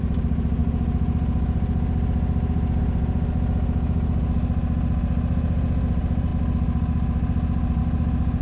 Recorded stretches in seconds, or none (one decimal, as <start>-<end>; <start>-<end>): 0.0-8.4